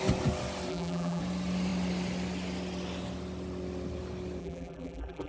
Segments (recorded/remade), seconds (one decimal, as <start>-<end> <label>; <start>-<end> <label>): 0.0-0.7 recorded; 0.7-1.2 remade; 1.2-4.4 recorded; 4.4-5.3 remade